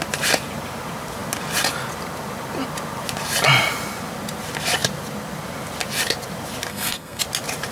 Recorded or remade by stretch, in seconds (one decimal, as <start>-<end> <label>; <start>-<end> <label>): 0.0-6.7 recorded; 6.7-7.2 remade; 7.2-7.7 recorded